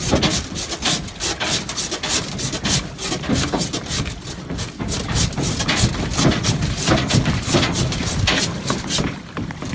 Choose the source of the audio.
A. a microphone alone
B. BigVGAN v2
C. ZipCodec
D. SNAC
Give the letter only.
A